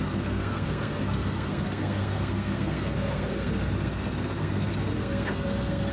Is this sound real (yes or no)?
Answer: no